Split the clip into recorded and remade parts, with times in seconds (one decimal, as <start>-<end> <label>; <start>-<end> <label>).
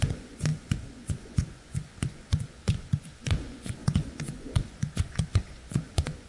0.0-6.3 remade